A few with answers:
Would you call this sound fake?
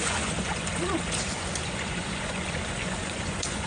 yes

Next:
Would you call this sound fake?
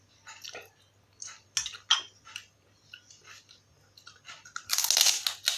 no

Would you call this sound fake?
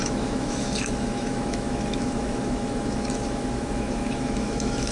yes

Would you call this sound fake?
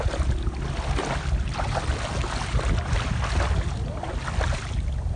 no